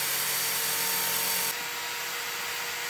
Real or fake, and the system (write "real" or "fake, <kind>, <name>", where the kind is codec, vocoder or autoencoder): real